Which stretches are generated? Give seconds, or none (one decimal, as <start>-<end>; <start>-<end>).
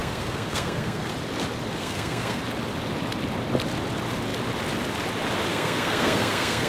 0.0-1.1; 1.8-2.4; 5.5-6.7